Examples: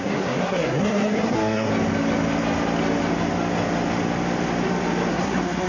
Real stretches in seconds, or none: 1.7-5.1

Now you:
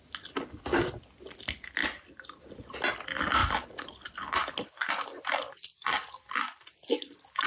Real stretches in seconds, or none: 0.0-7.5

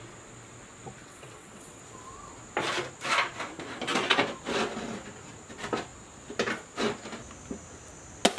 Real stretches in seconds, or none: 0.0-1.0; 1.8-8.4

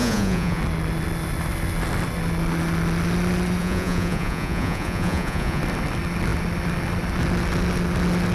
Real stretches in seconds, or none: 0.6-3.6; 5.6-8.3